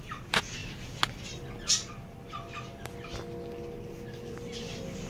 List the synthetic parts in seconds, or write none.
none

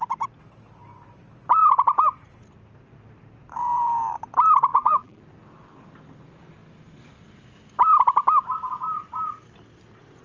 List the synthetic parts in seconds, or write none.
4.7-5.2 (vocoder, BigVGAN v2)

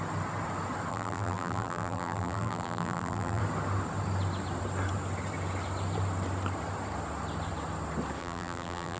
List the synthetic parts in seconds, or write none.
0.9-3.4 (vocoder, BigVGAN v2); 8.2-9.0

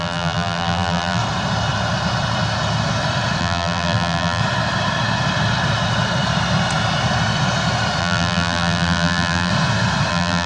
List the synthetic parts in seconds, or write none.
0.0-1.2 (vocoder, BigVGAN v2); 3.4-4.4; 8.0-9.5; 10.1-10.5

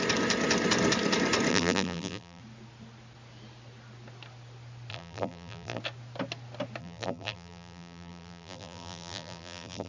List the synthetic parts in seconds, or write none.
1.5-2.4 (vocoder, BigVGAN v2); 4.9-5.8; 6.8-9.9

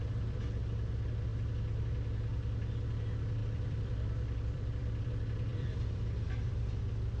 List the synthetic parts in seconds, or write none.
3.4-5.1 (vocoder, BigVGAN v2); 5.5-6.8

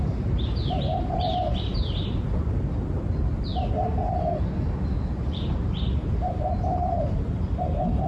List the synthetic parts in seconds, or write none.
0.0-3.5 (vocoder, BigVGAN v2); 5.2-8.1

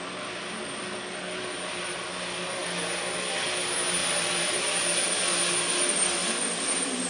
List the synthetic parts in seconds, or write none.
4.0-4.6 (vocoder, BigVGAN v2); 6.2-7.1